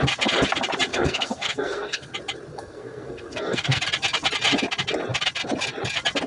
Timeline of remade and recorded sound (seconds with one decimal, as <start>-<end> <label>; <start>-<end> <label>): 0.0-0.9 recorded; 0.9-2.1 remade; 2.1-2.5 recorded; 2.5-3.8 remade; 3.8-6.3 recorded